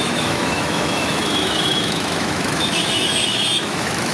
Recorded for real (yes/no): no